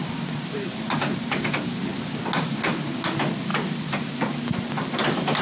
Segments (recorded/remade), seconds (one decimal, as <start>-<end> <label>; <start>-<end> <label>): 0.0-5.4 recorded